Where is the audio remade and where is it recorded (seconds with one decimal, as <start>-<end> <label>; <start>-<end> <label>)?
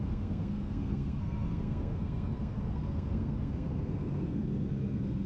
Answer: 0.0-5.3 remade